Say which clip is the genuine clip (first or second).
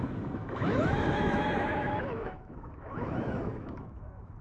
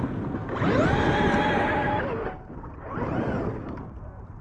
second